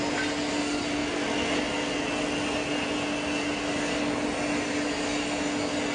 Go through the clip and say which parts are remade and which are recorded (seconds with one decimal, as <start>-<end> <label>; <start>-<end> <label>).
0.0-5.9 recorded